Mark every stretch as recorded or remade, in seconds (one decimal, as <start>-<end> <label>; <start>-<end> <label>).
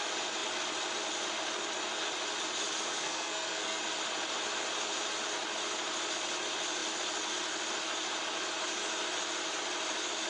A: 0.0-2.9 recorded; 2.9-3.8 remade; 3.8-10.3 recorded